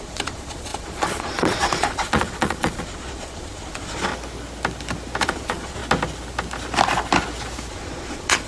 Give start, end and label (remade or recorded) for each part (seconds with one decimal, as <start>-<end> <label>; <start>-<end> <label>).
0.0-4.1 remade; 4.1-5.2 recorded; 5.2-5.8 remade; 5.8-7.7 recorded; 7.7-8.5 remade